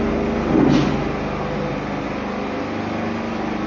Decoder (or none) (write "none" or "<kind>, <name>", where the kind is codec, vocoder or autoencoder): none